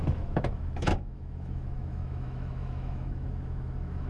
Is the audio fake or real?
fake